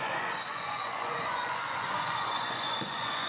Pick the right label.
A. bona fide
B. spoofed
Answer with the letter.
B